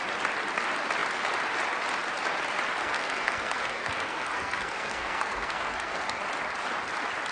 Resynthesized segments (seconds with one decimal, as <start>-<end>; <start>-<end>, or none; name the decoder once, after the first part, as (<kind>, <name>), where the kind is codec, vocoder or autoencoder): 2.8-6.2 (codec, SNAC)